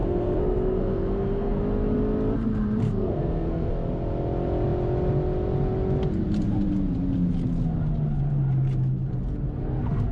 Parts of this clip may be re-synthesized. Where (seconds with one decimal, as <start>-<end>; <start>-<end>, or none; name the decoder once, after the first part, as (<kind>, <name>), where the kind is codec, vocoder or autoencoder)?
0.0-1.6 (codec, SNAC); 2.8-3.7